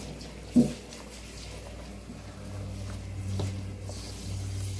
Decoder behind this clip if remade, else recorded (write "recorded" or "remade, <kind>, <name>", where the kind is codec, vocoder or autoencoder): recorded